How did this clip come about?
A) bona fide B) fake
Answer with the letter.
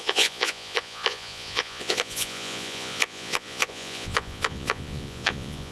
B